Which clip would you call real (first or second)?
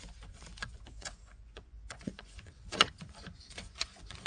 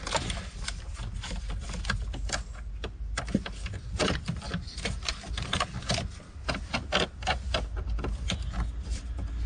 second